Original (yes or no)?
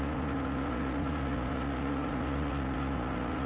no